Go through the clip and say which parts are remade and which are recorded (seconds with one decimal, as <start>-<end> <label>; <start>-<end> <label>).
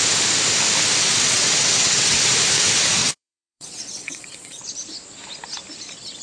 0.0-1.1 recorded; 1.1-2.3 remade; 2.3-3.0 recorded; 3.0-4.6 remade; 4.6-6.2 recorded